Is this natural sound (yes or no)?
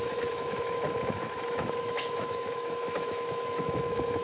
no